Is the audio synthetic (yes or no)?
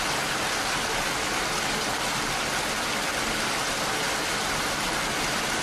no